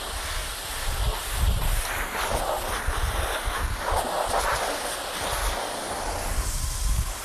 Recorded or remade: recorded